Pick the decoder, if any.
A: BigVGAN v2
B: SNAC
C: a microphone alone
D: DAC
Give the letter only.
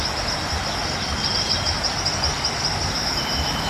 C